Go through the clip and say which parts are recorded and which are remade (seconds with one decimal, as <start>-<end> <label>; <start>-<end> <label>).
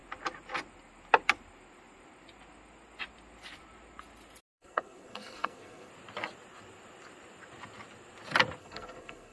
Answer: 0.0-4.4 recorded; 4.4-5.9 remade; 5.9-8.6 recorded; 8.6-9.3 remade